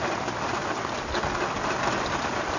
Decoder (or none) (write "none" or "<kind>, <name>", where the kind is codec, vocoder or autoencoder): none